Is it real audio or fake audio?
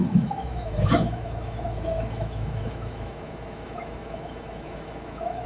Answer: fake